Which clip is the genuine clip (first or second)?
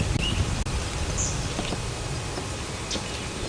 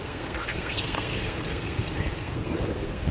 first